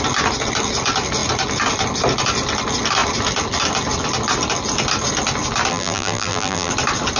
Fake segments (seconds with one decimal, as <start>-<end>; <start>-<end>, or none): 5.7-6.7